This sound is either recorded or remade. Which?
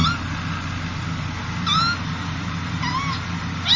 recorded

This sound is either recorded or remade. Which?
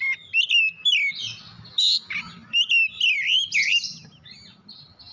recorded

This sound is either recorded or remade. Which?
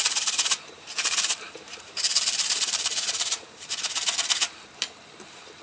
remade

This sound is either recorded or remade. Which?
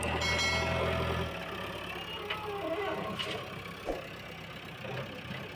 recorded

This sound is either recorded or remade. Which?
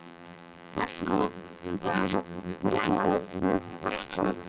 remade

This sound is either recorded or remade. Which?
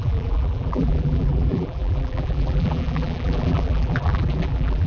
remade